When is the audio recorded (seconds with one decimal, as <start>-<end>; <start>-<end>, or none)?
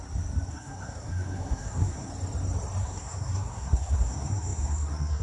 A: 0.0-0.5; 2.1-2.8